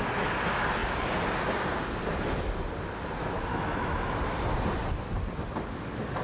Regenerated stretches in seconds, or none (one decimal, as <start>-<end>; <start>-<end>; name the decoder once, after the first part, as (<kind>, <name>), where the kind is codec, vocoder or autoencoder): 3.5-4.1 (autoencoder, DAC-VAE)